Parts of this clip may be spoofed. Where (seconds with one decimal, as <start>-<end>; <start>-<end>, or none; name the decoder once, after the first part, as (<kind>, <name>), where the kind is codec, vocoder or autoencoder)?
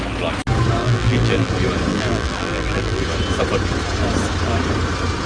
0.8-1.5 (vocoder, BigVGAN v2); 1.9-3.0